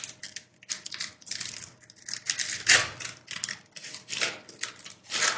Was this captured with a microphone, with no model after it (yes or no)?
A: yes